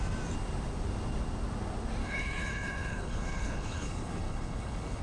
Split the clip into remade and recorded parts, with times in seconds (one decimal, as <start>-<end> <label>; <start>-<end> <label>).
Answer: 0.0-2.0 recorded; 2.0-5.0 remade